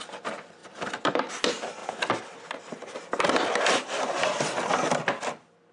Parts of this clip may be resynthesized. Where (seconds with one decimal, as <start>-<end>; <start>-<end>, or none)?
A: none